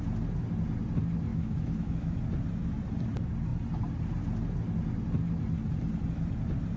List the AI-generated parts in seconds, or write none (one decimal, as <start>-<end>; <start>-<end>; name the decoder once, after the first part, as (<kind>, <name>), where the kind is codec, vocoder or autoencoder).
1.3-2.2 (autoencoder, DAC-VAE)

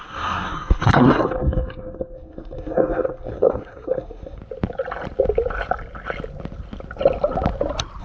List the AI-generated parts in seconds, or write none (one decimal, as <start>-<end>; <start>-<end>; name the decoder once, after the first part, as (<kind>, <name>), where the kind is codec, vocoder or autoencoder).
0.0-4.4 (codec, SNAC)

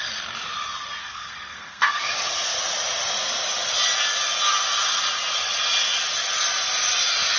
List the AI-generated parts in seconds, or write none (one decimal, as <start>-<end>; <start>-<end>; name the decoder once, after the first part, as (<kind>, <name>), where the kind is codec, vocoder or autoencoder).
1.0-2.0 (codec, SNAC)

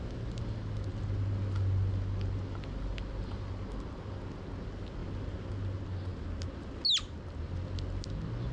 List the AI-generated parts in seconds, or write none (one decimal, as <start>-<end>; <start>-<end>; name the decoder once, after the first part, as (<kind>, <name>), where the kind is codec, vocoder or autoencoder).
none

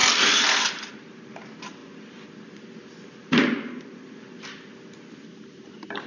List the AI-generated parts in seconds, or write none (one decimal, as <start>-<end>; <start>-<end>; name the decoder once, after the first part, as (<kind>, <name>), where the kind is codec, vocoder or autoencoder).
0.0-0.9 (vocoder, BigVGAN v2)

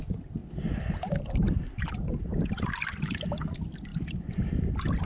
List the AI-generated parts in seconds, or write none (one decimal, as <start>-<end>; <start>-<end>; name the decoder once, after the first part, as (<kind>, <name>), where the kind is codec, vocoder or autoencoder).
none

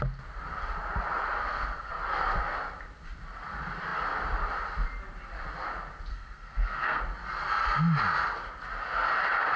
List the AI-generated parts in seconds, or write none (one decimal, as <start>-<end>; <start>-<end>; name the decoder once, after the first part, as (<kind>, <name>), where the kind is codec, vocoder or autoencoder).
1.4-1.9 (codec, SNAC); 6.1-7.0